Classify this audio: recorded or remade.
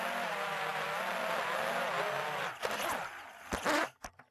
recorded